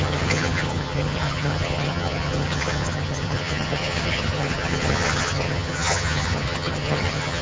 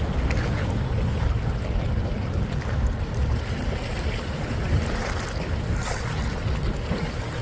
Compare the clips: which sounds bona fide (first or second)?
second